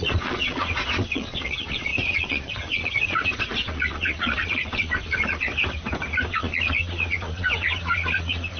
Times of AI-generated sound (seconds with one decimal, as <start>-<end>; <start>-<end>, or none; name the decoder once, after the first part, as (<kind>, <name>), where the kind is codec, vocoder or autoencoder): 0.0-5.5 (vocoder, Vocos); 6.3-8.6